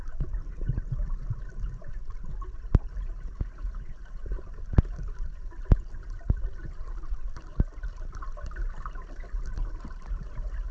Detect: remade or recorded recorded